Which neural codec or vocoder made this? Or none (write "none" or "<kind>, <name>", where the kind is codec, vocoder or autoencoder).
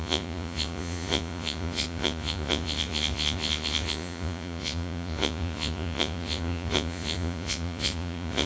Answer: vocoder, Vocos